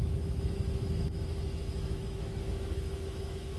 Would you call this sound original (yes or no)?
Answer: no